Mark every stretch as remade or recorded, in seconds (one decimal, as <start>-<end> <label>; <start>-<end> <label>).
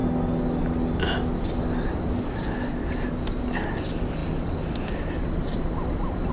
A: 0.0-6.3 recorded